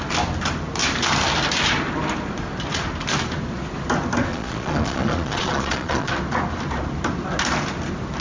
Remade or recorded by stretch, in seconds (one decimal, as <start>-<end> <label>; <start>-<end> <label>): 0.0-4.3 recorded; 4.3-6.1 remade; 6.1-8.2 recorded